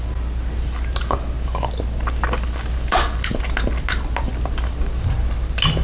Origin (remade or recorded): recorded